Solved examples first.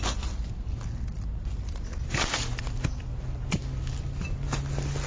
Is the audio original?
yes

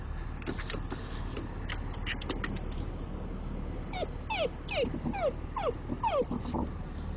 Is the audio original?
yes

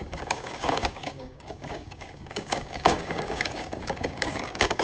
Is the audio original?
no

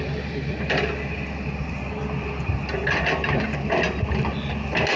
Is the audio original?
yes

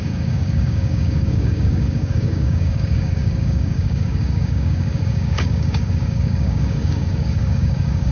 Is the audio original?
no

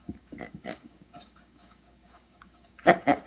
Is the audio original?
no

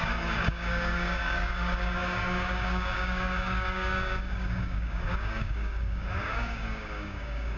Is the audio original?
no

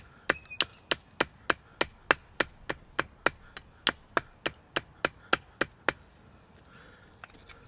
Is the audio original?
yes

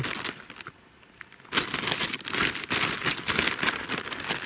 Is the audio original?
yes